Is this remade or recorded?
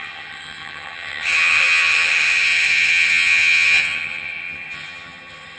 remade